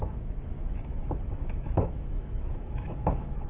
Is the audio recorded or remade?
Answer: remade